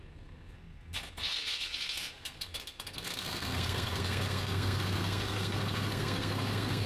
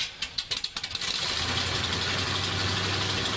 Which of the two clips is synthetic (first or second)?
first